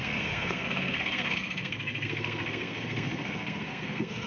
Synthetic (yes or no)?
yes